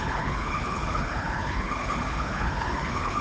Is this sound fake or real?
fake